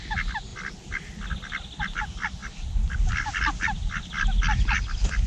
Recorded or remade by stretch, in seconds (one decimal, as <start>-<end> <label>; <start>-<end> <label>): 0.0-2.4 recorded; 2.4-3.1 remade; 3.1-5.3 recorded